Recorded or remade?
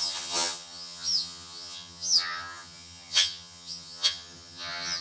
remade